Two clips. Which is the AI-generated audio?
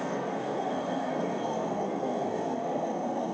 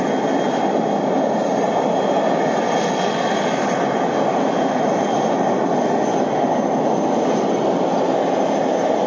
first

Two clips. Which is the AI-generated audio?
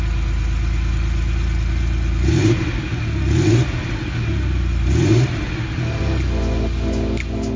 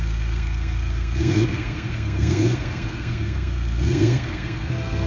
second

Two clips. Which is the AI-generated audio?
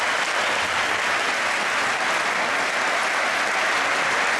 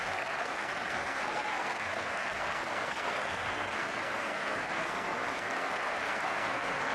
second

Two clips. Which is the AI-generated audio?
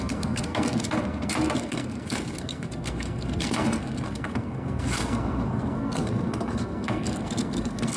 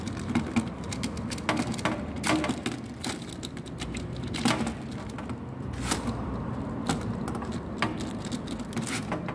first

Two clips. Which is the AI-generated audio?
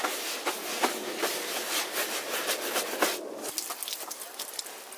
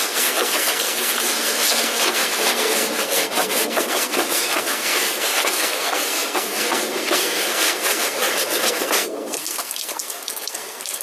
second